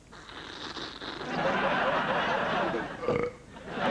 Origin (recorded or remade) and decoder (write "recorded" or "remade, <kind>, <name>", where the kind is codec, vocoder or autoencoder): recorded